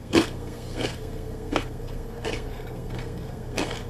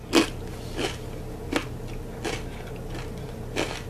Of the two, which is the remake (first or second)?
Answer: first